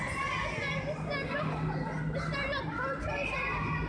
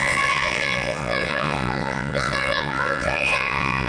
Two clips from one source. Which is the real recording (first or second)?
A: first